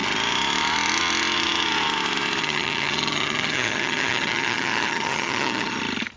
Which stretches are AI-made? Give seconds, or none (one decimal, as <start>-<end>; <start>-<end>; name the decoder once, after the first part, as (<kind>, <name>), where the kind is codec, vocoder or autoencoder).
2.4-5.8 (vocoder, HiFi-GAN)